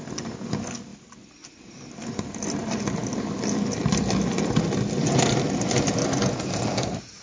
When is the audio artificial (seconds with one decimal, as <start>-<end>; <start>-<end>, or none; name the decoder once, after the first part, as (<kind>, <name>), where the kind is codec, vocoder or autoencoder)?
none